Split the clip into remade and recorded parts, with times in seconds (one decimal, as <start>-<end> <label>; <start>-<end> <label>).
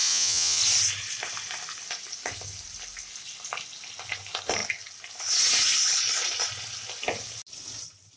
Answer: 0.0-0.6 remade; 0.6-8.2 recorded